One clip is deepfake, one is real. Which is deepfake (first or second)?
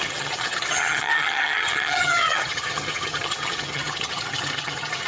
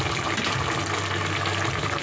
first